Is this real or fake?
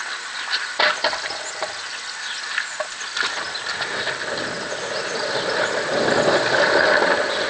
real